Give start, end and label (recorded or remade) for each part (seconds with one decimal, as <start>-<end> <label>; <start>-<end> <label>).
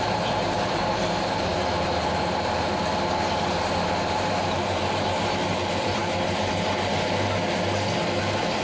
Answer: 0.0-2.8 remade; 2.8-3.8 recorded; 3.8-6.0 remade; 6.0-8.2 recorded; 8.2-8.6 remade